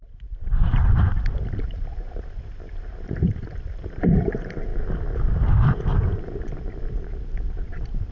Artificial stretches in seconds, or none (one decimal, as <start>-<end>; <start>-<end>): 0.0-4.7; 6.9-8.1